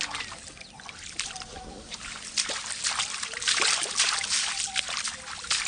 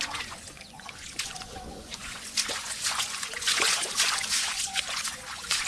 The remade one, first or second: second